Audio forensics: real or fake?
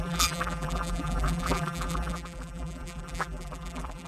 fake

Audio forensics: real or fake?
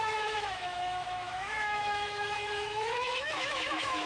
fake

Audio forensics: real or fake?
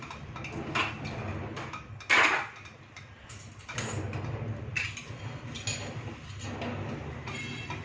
real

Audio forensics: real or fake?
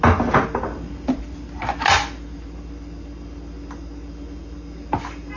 real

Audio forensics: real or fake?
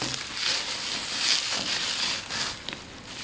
real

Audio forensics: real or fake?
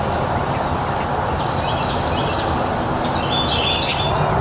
real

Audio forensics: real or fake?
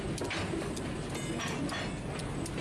real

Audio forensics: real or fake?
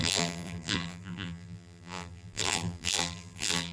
fake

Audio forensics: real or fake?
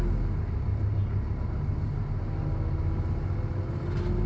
real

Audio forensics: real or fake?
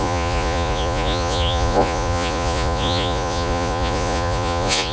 fake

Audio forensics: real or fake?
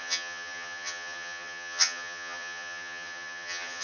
fake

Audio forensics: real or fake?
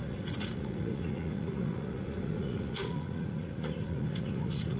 fake